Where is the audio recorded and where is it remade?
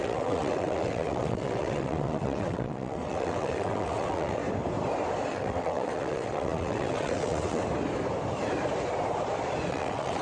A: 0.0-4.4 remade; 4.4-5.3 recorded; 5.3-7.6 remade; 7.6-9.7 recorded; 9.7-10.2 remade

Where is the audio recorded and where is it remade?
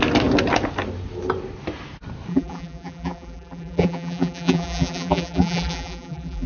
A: 0.0-2.3 recorded; 2.3-6.5 remade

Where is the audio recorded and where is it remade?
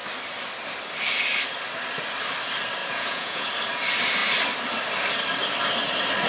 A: 0.0-2.8 recorded; 2.8-3.5 remade; 3.5-6.3 recorded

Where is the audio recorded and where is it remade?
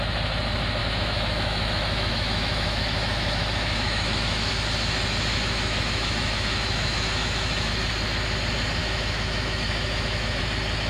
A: 0.0-0.8 recorded; 0.8-4.5 remade; 4.5-5.3 recorded; 5.3-7.7 remade; 7.7-8.8 recorded; 8.8-10.4 remade; 10.4-10.9 recorded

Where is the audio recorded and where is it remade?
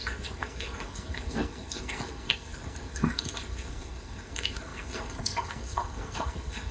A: 0.0-6.7 remade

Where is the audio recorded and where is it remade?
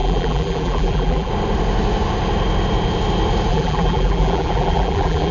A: 0.0-1.3 remade; 1.3-3.5 recorded; 3.5-5.3 remade